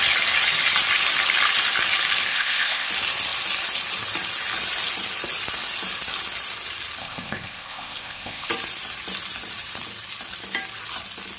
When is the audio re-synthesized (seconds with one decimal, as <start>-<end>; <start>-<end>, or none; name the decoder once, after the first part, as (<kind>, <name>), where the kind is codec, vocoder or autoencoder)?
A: 2.3-2.9 (codec, ZipCodec); 7.0-8.5